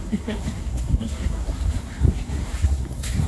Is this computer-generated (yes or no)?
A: yes